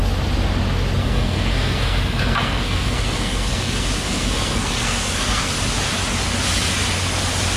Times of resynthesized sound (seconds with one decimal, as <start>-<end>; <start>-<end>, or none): 1.0-5.5